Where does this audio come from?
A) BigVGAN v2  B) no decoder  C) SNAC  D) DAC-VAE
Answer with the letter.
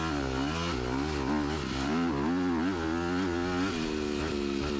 B